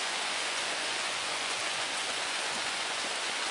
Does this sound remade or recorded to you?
remade